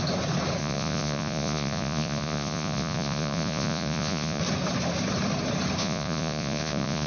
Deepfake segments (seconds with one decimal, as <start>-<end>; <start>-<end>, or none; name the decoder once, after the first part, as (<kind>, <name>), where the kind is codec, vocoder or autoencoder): 0.6-4.4 (vocoder, Vocos); 5.8-7.1